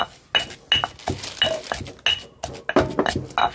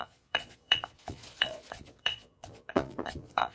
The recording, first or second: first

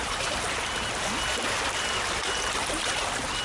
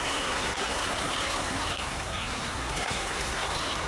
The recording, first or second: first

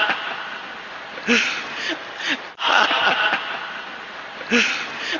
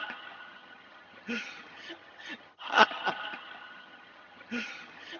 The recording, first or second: first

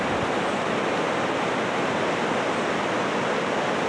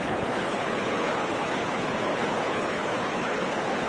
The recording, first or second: first